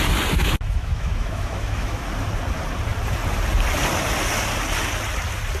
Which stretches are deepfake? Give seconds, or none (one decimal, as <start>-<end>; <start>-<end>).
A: 0.4-2.1

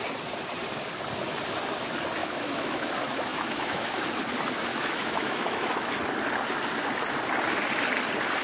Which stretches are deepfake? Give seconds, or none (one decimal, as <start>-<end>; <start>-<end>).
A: 2.2-2.9; 3.3-4.0; 4.7-5.9

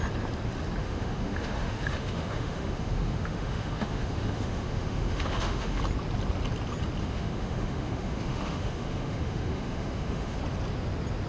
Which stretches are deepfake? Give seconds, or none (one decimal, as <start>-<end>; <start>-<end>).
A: 0.8-5.8; 7.0-10.4

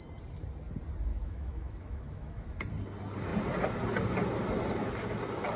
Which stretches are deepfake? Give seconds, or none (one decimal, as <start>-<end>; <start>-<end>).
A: 1.1-2.7

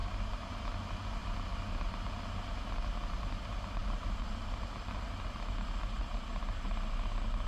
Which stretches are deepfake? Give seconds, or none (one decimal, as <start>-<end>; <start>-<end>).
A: none

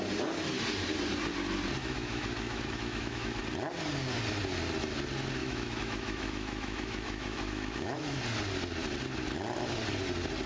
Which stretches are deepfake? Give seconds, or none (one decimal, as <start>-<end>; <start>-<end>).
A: 1.8-3.4; 5.4-8.2

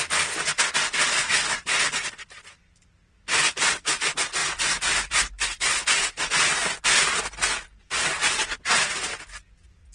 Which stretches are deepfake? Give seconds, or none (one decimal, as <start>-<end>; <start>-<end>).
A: none

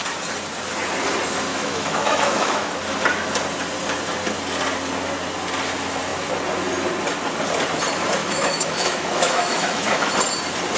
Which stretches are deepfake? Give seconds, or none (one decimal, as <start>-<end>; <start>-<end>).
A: 1.5-2.8; 8.2-10.1